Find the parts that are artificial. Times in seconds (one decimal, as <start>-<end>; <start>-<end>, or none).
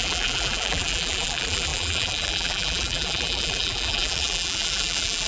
0.0-5.3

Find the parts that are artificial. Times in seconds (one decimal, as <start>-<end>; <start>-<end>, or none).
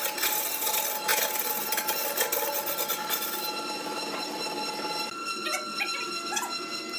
1.1-2.2